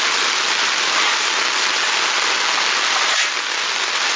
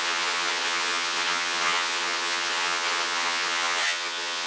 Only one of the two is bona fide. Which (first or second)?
first